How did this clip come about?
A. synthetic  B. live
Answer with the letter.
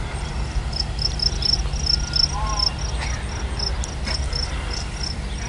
B